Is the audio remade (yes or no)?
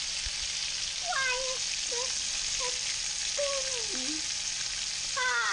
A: no